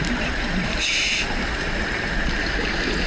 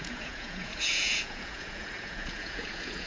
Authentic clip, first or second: first